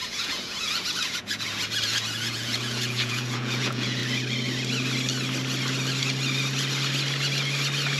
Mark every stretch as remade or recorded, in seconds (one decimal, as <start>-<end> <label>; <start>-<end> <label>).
0.0-4.0 remade; 4.0-8.0 recorded